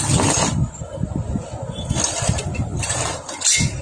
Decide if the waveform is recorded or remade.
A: recorded